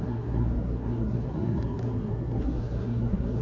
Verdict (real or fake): fake